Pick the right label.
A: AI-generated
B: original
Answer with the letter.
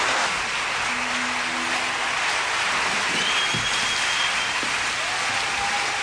B